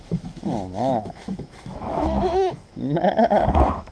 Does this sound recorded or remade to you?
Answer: remade